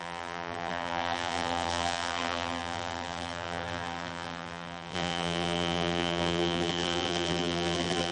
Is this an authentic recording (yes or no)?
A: no